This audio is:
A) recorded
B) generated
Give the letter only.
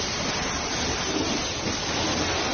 A